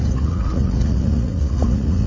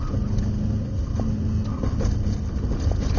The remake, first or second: first